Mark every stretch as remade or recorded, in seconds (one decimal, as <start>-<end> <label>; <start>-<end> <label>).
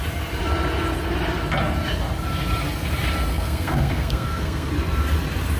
0.0-3.3 recorded; 3.3-4.7 remade; 4.7-5.6 recorded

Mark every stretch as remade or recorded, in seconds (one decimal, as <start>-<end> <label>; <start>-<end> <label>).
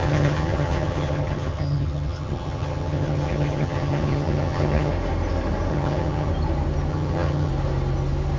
0.0-4.9 remade; 4.9-5.7 recorded; 5.7-6.3 remade; 6.3-6.9 recorded; 6.9-7.5 remade; 7.5-8.4 recorded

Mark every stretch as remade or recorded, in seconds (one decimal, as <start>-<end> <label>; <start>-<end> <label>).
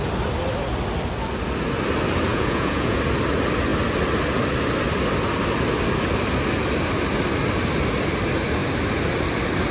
0.0-2.3 recorded; 2.3-3.0 remade; 3.0-9.7 recorded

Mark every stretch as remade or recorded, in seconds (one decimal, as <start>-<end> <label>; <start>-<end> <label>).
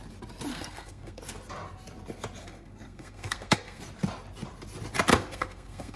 0.0-0.5 recorded; 0.5-1.2 remade; 1.2-2.4 recorded; 2.4-3.8 remade; 3.8-5.1 recorded; 5.1-6.0 remade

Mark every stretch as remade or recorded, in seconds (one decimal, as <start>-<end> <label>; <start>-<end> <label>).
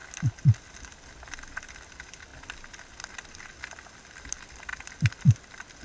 0.0-5.8 recorded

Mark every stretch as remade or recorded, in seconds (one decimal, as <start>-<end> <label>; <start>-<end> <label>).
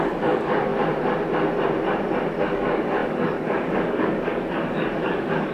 0.0-0.7 remade; 0.7-2.4 recorded; 2.4-5.5 remade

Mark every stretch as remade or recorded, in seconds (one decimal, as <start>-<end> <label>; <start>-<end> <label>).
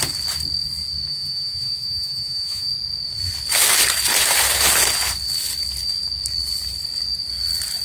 0.0-1.1 recorded; 1.1-2.7 remade; 2.7-7.8 recorded